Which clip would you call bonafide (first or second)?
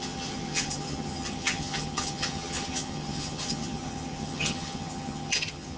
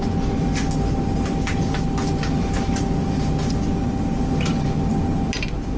second